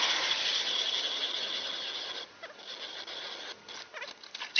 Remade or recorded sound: recorded